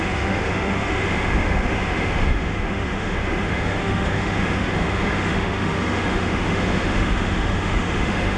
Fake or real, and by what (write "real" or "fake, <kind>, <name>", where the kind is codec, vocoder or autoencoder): fake, autoencoder, DAC-VAE